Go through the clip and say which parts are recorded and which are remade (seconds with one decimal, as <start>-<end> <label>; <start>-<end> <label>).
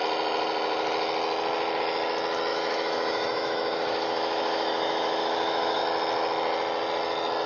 0.0-2.5 recorded; 2.5-5.8 remade; 5.8-7.5 recorded